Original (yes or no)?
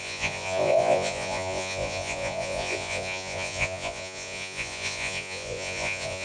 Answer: no